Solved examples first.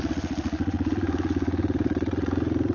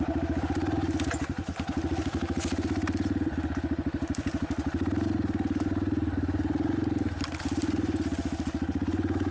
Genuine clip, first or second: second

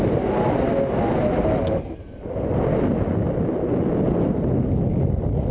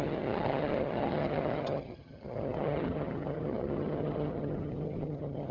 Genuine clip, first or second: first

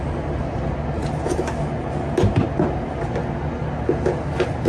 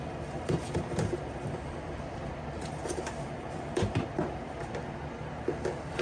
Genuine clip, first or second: first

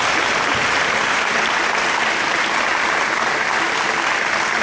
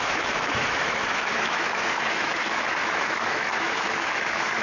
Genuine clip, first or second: first